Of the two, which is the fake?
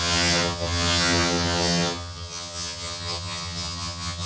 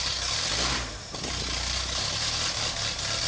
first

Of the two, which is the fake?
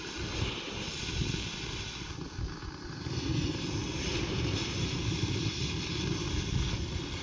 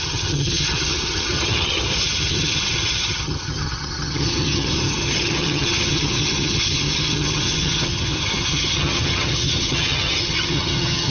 second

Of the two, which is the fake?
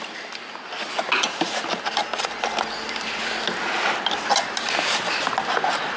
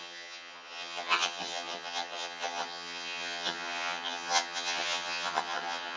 second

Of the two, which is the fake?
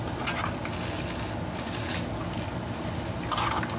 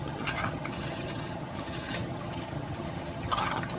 second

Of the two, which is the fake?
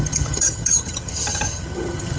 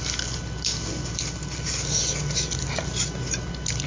first